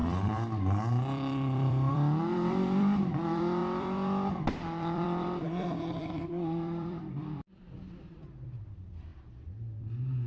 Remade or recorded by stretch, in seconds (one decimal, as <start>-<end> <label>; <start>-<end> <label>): 0.0-9.1 remade; 9.1-10.3 recorded